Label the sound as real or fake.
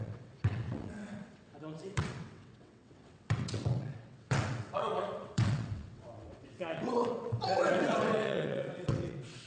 fake